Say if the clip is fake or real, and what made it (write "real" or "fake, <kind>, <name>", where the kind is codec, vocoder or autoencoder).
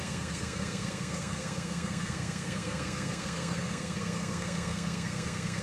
fake, codec, SNAC